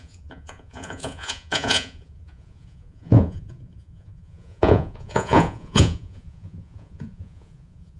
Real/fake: fake